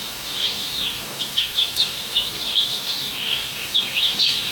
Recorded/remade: remade